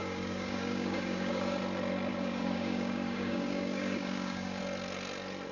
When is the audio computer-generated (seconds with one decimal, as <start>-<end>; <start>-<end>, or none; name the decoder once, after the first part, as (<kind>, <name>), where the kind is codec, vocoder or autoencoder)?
0.0-1.6 (codec, DAC); 2.1-4.6